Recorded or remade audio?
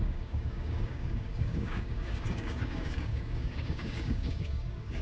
remade